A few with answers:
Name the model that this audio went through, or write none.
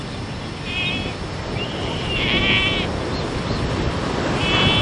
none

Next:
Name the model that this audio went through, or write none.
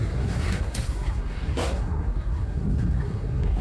codec, SNAC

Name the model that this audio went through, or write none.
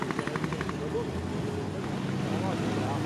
none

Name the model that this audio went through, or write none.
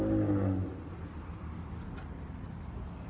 none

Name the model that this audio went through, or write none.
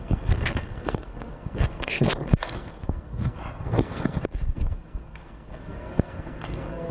codec, SNAC